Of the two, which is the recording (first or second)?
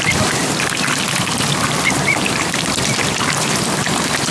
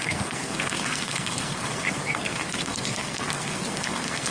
first